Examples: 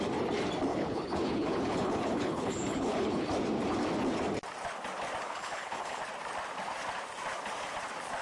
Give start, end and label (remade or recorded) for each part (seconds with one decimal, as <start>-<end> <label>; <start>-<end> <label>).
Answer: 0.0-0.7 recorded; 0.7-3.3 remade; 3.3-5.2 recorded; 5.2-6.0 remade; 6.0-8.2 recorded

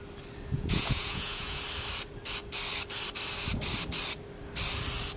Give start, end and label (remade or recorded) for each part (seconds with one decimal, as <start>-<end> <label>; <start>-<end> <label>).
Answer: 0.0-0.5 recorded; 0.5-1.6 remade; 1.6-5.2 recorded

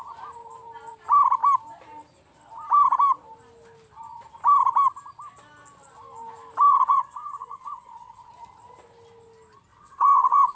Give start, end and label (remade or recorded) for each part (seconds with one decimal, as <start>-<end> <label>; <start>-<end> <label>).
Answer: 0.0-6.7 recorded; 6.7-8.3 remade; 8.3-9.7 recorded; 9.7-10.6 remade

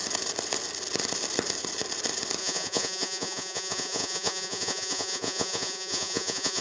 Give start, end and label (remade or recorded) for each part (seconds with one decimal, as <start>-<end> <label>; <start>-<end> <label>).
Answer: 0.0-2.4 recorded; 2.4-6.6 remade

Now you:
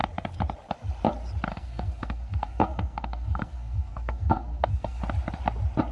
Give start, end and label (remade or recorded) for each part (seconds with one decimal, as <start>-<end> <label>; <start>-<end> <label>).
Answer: 0.0-1.5 recorded; 1.5-5.0 remade; 5.0-5.9 recorded

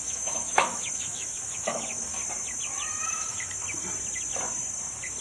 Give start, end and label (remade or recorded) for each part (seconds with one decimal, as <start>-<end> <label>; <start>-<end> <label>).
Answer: 0.0-2.2 remade; 2.2-3.0 recorded; 3.0-3.5 remade; 3.5-5.2 recorded

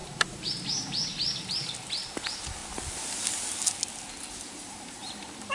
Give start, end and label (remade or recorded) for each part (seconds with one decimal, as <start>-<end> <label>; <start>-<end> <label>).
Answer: 0.0-0.5 remade; 0.5-5.5 recorded

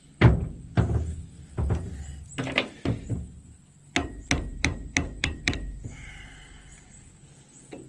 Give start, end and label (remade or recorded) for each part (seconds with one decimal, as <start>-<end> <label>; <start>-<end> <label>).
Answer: 0.0-4.0 recorded; 4.0-7.1 remade; 7.1-7.9 recorded